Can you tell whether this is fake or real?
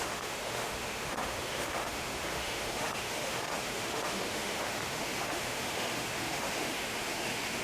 fake